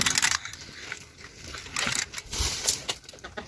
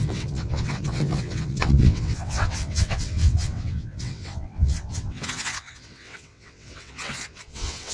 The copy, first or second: second